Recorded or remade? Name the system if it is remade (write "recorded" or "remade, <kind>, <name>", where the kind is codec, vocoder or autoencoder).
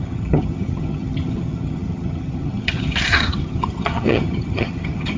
remade, vocoder, HiFi-GAN